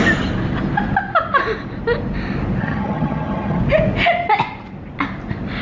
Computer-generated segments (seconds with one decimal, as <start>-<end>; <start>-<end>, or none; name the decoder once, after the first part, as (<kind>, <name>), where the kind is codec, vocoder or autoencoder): 2.6-3.6 (vocoder, HiFi-GAN)